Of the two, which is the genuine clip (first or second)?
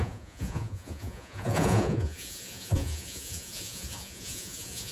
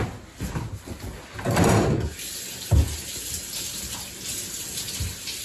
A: second